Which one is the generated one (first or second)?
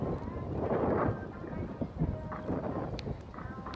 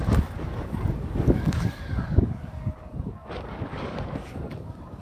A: second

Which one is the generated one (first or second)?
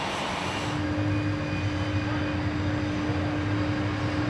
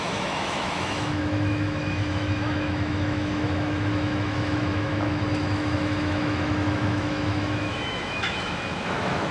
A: second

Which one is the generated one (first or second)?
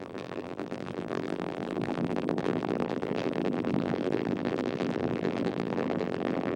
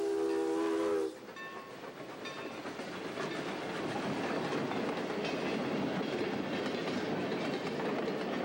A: first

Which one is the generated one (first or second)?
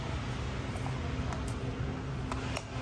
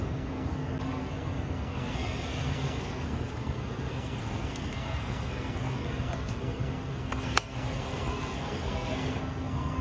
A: second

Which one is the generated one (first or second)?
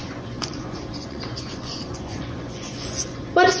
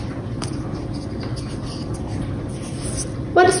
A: first